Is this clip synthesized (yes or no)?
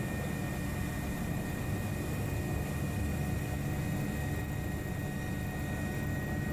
no